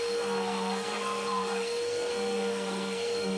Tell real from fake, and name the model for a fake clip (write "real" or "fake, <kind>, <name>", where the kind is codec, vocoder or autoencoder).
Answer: fake, codec, SNAC